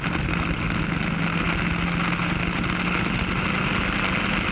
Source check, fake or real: real